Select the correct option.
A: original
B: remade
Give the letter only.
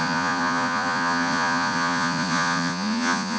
B